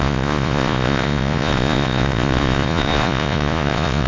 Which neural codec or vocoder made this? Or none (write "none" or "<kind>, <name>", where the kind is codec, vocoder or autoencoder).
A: vocoder, Vocos